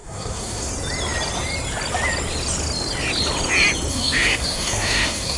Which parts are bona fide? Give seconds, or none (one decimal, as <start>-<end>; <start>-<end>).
0.7-3.9